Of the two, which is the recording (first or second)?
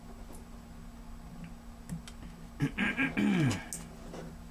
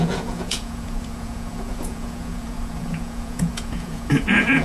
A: first